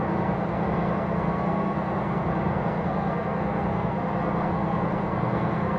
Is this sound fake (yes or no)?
yes